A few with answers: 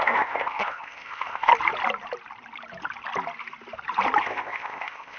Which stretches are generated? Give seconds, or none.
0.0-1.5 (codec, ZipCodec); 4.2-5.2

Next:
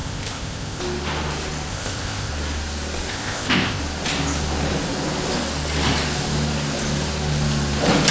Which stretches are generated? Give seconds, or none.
0.0-0.8 (codec, ZipCodec); 1.7-2.3; 3.1-3.8